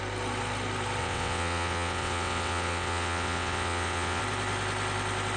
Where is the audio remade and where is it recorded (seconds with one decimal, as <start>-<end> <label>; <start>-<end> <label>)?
0.0-1.0 recorded; 1.0-4.2 remade; 4.2-5.4 recorded